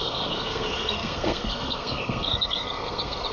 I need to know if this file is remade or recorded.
remade